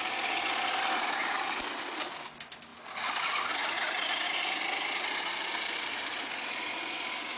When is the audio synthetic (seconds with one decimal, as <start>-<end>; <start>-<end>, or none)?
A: none